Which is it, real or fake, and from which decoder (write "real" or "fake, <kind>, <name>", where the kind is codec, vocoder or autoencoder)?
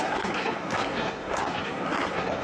fake, codec, SNAC